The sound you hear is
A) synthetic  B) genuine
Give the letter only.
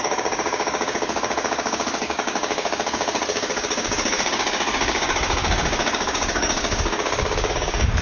A